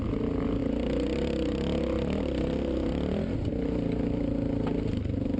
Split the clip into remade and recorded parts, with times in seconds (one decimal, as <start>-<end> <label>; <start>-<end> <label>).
0.0-5.4 recorded